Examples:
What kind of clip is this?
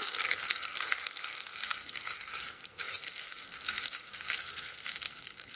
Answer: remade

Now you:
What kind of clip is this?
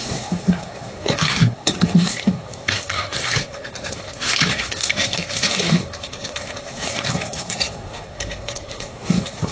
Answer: remade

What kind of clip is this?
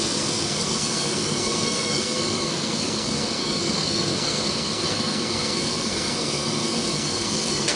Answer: remade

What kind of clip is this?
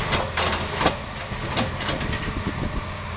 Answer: recorded